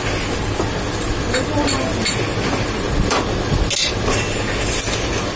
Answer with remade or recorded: recorded